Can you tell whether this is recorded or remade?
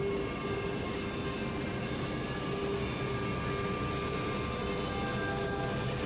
recorded